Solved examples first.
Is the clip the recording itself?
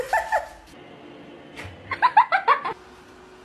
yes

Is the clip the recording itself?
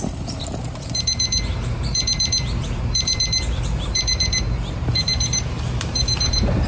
no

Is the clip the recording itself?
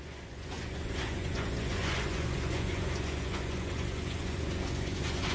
no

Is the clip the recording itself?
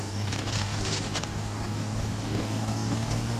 no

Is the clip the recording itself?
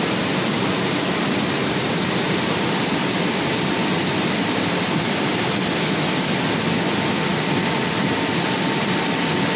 no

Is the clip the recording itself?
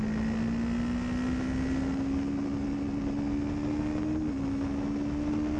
yes